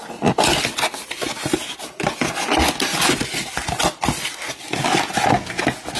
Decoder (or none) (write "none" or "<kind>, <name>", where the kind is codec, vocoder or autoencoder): none